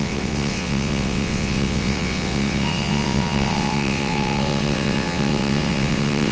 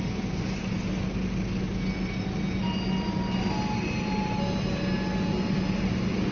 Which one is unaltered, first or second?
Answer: second